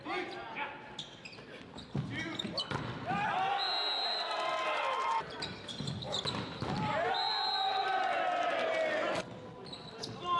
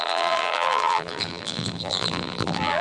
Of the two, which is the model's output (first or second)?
second